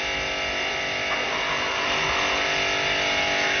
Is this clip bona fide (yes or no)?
yes